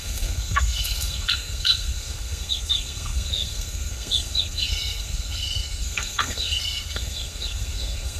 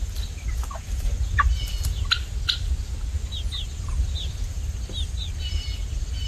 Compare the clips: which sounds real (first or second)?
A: second